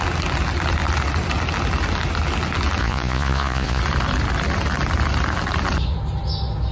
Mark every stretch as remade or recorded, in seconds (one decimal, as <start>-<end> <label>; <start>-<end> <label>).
0.0-2.8 recorded; 2.8-3.8 remade; 3.8-6.7 recorded